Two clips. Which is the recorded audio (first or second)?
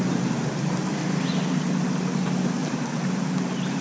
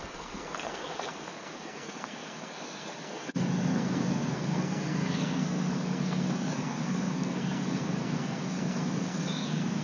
first